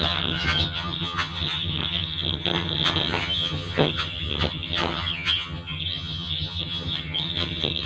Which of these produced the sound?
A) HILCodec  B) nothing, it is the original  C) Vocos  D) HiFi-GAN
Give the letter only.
D